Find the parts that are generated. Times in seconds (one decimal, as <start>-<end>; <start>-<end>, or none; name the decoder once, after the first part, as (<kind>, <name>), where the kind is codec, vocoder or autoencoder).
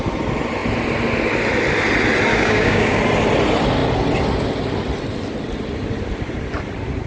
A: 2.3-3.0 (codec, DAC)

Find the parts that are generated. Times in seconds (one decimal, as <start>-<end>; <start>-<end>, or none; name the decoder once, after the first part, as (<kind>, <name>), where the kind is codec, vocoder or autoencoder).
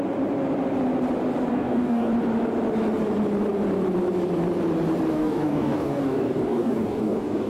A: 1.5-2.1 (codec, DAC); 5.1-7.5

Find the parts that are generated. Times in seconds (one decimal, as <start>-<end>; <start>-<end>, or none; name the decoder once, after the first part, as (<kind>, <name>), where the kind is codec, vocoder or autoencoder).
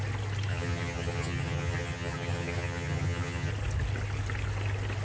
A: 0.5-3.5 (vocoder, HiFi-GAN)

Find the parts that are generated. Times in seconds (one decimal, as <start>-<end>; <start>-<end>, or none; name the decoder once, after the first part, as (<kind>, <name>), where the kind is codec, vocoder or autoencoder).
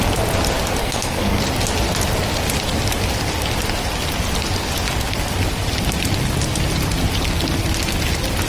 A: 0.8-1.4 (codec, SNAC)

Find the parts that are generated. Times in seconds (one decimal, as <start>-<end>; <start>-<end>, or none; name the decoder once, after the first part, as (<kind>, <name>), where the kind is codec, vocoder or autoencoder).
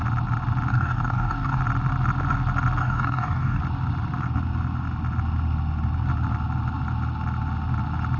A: 0.7-1.6 (codec, DAC); 2.8-3.6